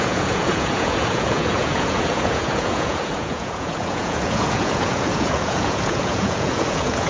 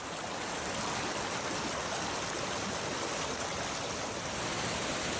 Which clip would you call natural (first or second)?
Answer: second